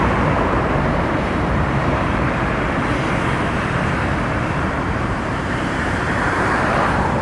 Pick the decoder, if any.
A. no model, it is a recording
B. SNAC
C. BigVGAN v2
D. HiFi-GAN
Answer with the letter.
C